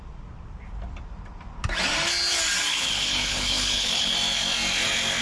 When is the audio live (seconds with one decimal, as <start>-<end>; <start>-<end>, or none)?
0.0-2.7; 4.1-5.2

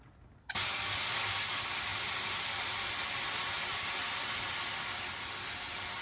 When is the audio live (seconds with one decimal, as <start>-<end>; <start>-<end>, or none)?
0.0-6.0

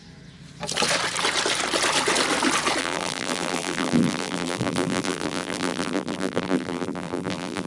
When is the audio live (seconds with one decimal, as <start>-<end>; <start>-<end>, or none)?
0.0-2.8

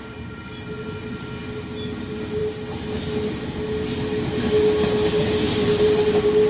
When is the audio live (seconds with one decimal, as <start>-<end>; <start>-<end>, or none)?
0.0-6.5

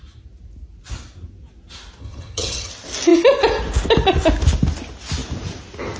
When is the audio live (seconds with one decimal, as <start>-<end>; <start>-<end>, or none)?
0.0-2.0; 2.7-6.0

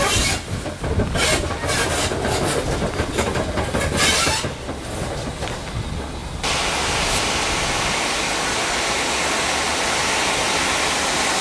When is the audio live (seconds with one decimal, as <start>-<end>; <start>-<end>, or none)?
0.0-11.4

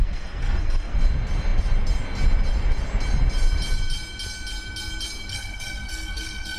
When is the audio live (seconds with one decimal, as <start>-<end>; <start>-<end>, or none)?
1.0-5.3

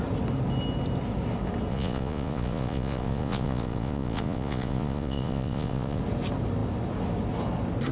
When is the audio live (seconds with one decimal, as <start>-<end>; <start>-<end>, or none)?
0.0-1.7; 6.0-7.9